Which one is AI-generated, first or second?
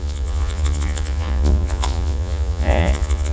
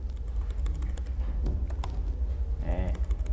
first